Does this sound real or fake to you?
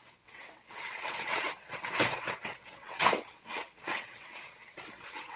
fake